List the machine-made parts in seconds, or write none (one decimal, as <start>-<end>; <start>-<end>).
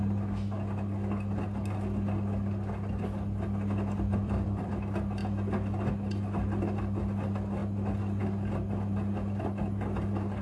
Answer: 4.1-4.7